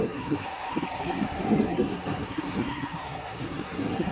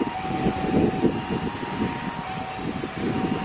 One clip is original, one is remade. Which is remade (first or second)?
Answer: first